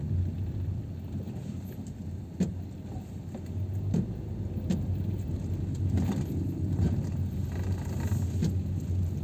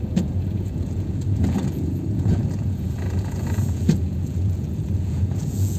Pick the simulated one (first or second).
second